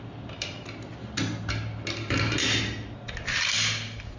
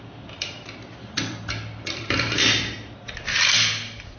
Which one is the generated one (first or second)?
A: second